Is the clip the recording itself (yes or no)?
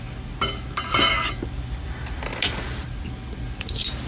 yes